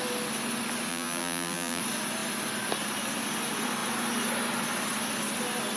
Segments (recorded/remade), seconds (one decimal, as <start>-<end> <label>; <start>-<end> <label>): 0.0-0.9 recorded; 0.9-1.8 remade; 1.8-5.8 recorded